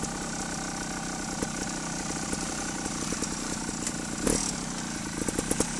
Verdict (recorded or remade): recorded